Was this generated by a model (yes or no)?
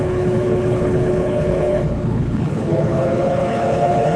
yes